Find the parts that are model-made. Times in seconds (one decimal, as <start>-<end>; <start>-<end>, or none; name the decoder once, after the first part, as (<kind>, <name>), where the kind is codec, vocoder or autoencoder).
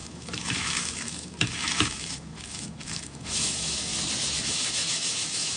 0.0-3.9 (autoencoder, DAC-VAE); 4.4-5.6